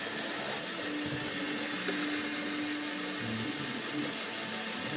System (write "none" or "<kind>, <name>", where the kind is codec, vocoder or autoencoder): none